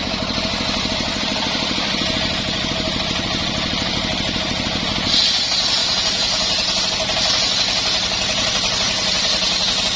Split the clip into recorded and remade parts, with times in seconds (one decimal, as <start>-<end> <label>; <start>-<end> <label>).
0.0-5.8 recorded; 5.8-6.8 remade; 6.8-10.0 recorded